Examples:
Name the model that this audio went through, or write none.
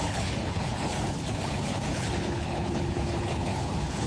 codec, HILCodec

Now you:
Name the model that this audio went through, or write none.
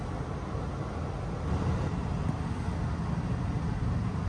none